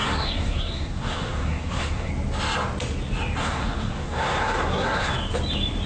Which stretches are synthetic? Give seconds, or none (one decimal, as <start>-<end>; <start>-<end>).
0.0-2.1; 3.4-5.1